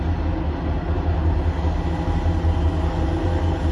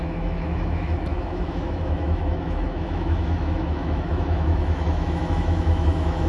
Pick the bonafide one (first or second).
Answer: first